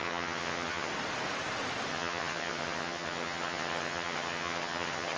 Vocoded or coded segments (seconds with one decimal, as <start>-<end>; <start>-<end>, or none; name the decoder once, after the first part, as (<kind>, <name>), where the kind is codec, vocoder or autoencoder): 0.0-0.9 (vocoder, HiFi-GAN); 1.9-5.2